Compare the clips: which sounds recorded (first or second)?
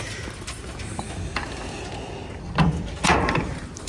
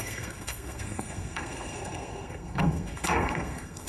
first